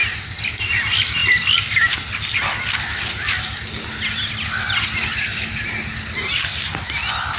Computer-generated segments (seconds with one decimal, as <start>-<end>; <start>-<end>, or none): none